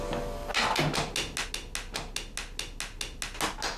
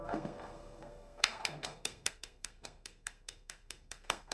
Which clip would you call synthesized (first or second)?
second